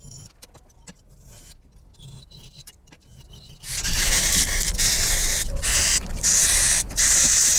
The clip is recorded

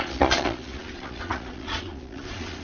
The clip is remade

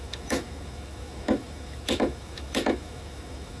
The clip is remade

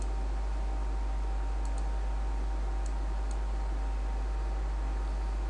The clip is recorded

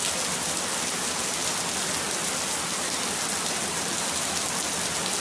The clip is recorded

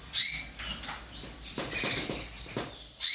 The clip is recorded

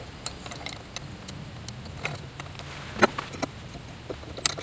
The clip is recorded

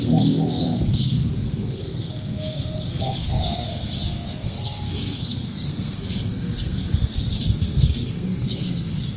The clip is remade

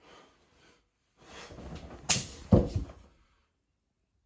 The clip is recorded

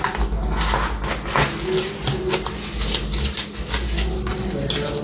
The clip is recorded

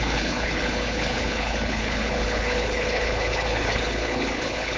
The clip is remade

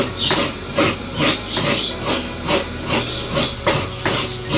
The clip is recorded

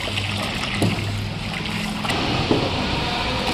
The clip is recorded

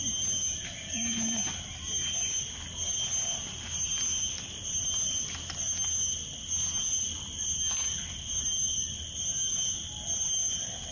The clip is recorded